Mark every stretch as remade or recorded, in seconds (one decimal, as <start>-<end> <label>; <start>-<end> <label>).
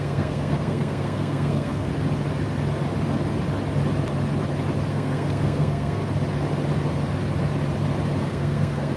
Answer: 0.0-1.9 remade; 1.9-4.9 recorded; 4.9-6.0 remade; 6.0-8.2 recorded; 8.2-9.0 remade